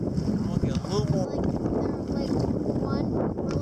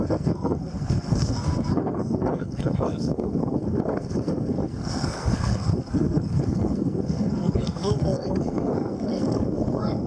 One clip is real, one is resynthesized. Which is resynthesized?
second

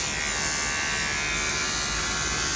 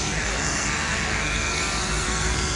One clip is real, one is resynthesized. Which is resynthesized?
second